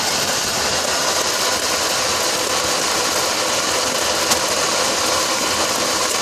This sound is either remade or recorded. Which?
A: recorded